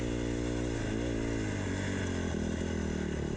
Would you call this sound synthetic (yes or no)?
no